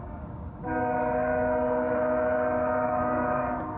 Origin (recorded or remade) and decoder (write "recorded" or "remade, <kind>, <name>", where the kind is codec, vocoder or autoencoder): remade, codec, DAC